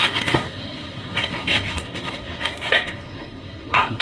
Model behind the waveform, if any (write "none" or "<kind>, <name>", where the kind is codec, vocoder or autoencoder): codec, SNAC